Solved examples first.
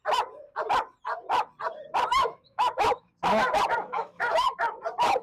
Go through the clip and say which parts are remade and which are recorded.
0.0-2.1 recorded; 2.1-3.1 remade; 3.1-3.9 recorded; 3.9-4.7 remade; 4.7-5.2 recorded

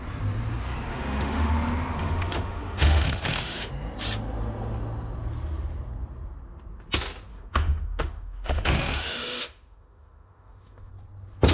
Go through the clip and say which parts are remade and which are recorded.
0.0-0.9 recorded; 0.9-1.5 remade; 1.5-2.0 recorded; 2.0-3.7 remade; 3.7-7.3 recorded; 7.3-10.9 remade; 10.9-11.5 recorded

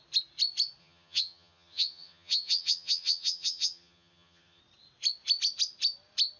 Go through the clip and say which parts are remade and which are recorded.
0.0-0.8 recorded; 0.8-4.6 remade; 4.6-6.4 recorded

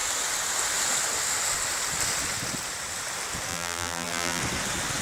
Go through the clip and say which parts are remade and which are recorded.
0.0-3.5 recorded; 3.5-4.4 remade; 4.4-5.0 recorded

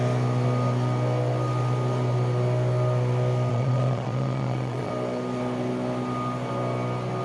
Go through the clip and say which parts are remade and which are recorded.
0.0-3.5 recorded; 3.5-4.9 remade; 4.9-7.2 recorded

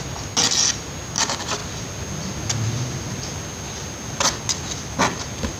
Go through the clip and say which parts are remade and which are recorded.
0.0-5.6 recorded

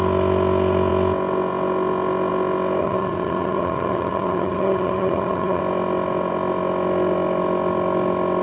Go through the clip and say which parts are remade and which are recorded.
0.0-2.8 recorded; 2.8-5.6 remade; 5.6-8.4 recorded